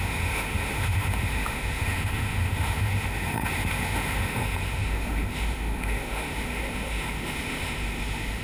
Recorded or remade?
remade